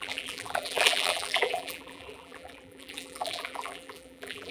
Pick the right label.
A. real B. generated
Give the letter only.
B